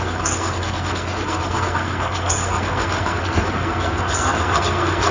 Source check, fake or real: fake